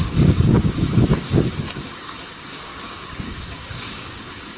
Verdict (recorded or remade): remade